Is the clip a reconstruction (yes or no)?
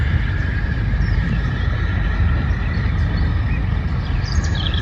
yes